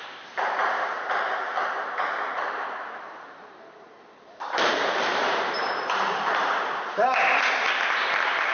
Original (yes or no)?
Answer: no